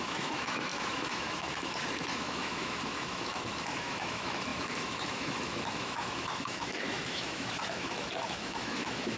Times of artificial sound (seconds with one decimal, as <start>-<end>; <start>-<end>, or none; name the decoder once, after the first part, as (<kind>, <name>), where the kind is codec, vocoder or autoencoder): 0.0-9.2 (autoencoder, DAC-VAE)